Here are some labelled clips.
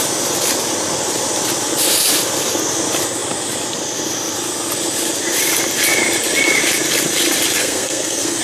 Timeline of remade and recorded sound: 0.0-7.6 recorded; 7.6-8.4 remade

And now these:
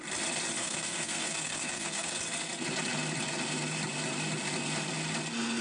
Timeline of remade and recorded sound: 0.0-0.6 recorded; 0.6-2.2 remade; 2.2-5.6 recorded